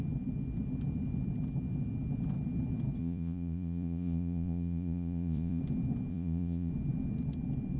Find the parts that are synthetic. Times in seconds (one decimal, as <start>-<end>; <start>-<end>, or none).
3.0-5.6; 6.1-6.7